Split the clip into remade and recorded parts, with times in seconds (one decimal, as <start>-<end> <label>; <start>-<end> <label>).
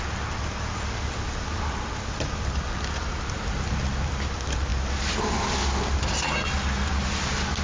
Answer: 0.0-7.6 recorded